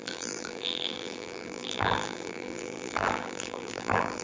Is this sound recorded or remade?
remade